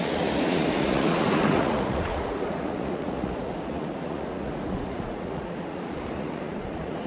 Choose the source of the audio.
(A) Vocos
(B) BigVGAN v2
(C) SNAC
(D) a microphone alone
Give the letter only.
A